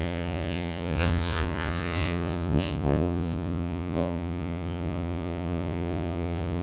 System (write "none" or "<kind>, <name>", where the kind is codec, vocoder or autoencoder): vocoder, Vocos